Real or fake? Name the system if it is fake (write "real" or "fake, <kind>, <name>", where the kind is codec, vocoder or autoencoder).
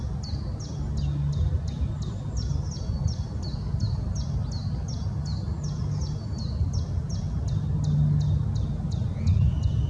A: real